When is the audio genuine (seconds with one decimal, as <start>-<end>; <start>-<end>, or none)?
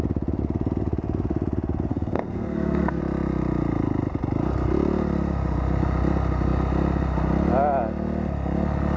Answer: 0.0-1.9; 3.0-9.0